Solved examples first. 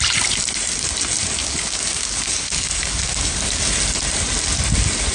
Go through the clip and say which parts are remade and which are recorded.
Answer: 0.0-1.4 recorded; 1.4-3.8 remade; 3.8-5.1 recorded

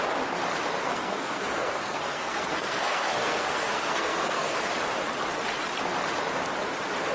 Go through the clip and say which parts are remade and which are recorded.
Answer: 0.0-0.8 recorded; 0.8-4.7 remade; 4.7-7.1 recorded

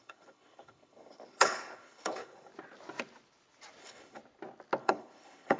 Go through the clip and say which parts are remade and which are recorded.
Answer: 0.0-2.5 remade; 2.5-3.8 recorded; 3.8-4.2 remade; 4.2-4.8 recorded; 4.8-5.6 remade

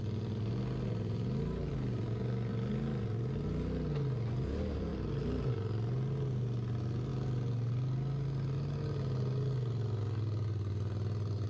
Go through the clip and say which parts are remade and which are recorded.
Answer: 0.0-11.5 recorded

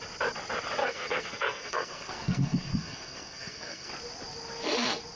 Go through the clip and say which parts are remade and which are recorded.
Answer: 0.0-0.8 recorded; 0.8-3.9 remade; 3.9-5.2 recorded

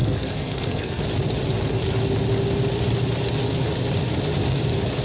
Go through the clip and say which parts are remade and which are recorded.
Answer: 0.0-1.0 remade; 1.0-5.0 recorded

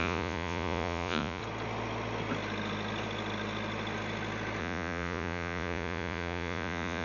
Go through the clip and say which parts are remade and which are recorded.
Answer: 0.0-1.4 remade; 1.4-4.6 recorded; 4.6-7.0 remade

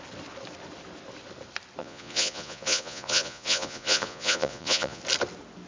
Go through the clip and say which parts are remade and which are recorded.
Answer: 0.0-1.8 recorded; 1.8-5.0 remade; 5.0-5.7 recorded